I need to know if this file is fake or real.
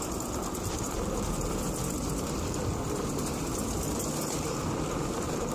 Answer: real